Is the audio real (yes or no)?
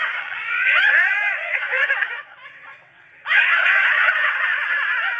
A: no